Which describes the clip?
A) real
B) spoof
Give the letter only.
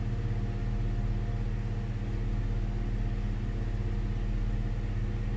A